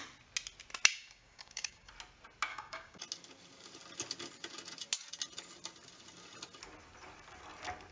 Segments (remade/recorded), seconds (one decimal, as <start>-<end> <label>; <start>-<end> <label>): 0.0-0.9 recorded; 0.9-1.9 remade; 1.9-2.5 recorded; 2.5-3.0 remade; 3.0-7.9 recorded